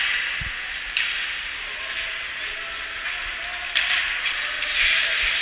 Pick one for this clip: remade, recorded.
recorded